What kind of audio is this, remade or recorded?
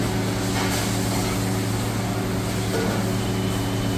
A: recorded